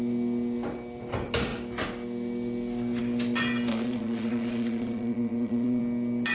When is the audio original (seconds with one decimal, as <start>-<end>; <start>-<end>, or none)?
0.0-3.7; 5.8-6.3